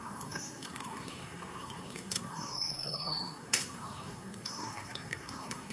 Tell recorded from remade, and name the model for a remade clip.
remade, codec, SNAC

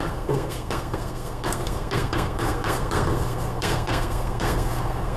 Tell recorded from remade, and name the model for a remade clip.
remade, codec, SNAC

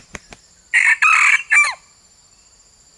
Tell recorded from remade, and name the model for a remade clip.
recorded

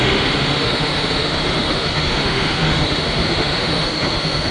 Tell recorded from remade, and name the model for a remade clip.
remade, autoencoder, DAC-VAE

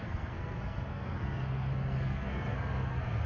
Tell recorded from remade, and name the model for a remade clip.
remade, codec, SNAC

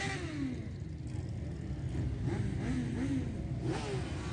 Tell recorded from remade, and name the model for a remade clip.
recorded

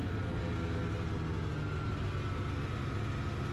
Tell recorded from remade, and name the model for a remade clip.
recorded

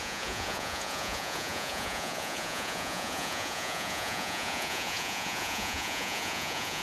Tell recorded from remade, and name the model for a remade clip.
remade, vocoder, Vocos